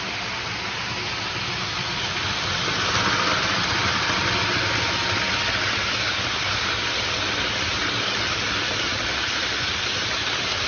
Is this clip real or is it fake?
real